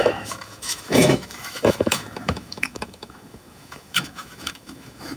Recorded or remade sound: remade